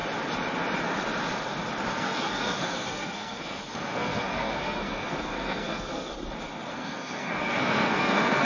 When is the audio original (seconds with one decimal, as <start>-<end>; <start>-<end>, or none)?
0.0-1.9; 6.1-6.7